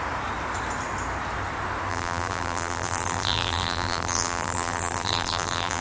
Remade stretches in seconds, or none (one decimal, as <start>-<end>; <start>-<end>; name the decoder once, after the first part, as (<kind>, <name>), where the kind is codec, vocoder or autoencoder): 1.9-5.8 (vocoder, BigVGAN v2)